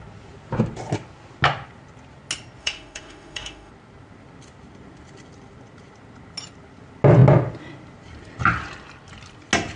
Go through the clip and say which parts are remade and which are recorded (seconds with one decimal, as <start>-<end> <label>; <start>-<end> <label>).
0.0-2.6 recorded; 2.6-3.7 remade; 3.7-9.8 recorded